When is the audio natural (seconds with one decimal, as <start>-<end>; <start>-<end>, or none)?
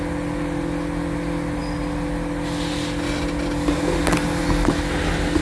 0.0-5.4